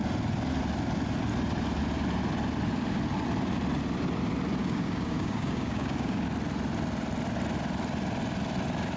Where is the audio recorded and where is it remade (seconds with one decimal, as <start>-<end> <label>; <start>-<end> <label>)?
0.0-4.6 recorded; 4.6-6.2 remade; 6.2-9.0 recorded